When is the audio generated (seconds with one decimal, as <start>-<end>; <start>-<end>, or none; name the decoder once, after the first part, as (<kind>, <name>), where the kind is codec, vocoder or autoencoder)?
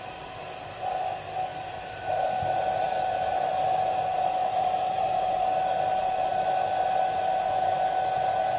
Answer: 1.5-2.2 (vocoder, BigVGAN v2); 4.4-5.4